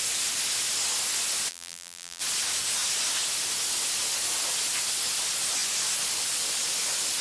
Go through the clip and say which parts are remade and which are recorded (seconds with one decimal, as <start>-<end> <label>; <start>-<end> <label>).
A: 0.0-1.5 recorded; 1.5-2.2 remade; 2.2-7.2 recorded